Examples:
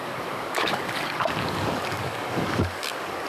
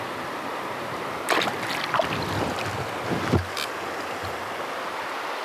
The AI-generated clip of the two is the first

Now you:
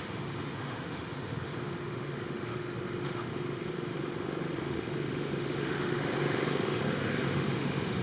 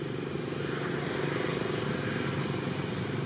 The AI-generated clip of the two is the first